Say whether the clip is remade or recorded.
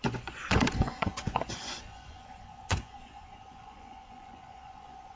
remade